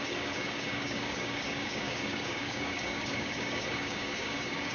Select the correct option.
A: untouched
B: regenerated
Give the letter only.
B